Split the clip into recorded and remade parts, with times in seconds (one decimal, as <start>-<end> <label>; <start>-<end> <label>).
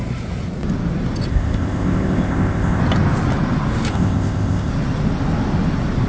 0.0-1.3 recorded; 1.3-2.8 remade; 2.8-3.9 recorded; 3.9-4.7 remade; 4.7-6.1 recorded